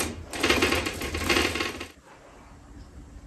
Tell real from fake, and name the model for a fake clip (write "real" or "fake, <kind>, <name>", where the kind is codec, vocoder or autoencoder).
real